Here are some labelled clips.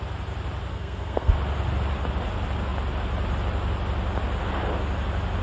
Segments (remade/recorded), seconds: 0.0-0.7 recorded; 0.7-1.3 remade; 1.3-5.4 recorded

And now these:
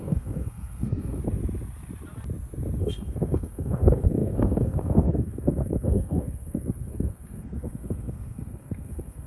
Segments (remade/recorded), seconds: 0.0-1.2 remade; 1.2-2.8 recorded; 2.8-9.3 remade

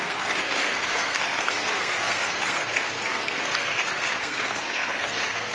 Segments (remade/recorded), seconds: 0.0-5.5 remade

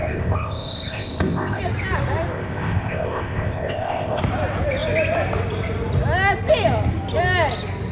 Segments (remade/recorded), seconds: 0.0-1.6 remade; 1.6-2.3 recorded; 2.3-4.2 remade; 4.2-7.9 recorded

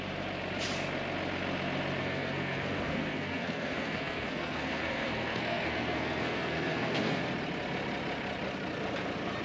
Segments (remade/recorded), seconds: 0.0-2.0 recorded; 2.0-7.2 remade; 7.2-9.4 recorded